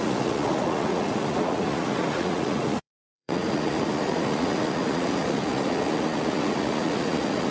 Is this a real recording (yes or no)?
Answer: no